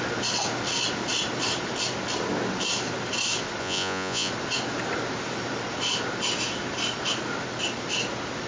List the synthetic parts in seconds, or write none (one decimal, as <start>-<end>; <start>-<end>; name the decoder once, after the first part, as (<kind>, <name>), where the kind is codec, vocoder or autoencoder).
3.6-4.3 (vocoder, Vocos)